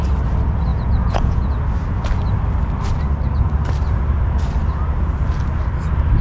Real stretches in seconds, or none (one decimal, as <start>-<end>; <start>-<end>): 0.0-0.7; 1.6-6.2